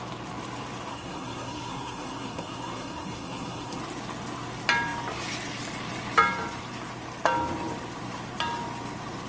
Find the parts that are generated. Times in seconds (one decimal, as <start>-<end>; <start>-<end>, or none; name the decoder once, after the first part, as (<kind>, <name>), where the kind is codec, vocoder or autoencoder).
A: 0.9-3.8 (codec, SNAC)